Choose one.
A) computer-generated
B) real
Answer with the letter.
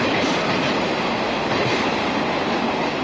B